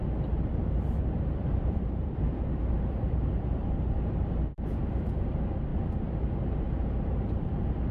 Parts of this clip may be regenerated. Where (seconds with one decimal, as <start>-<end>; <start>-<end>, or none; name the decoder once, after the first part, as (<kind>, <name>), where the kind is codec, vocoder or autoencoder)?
0.6-4.8 (vocoder, BigVGAN v2)